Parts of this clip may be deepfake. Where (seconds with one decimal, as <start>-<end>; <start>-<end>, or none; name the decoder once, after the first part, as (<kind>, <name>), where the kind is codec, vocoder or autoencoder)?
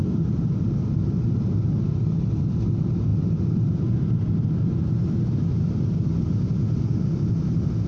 none